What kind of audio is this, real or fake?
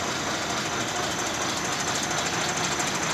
real